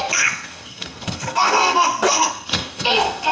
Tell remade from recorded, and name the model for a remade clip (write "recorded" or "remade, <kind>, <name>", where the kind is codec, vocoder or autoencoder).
remade, codec, SNAC